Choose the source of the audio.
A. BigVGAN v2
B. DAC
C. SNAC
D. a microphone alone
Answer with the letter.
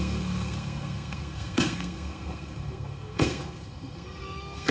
C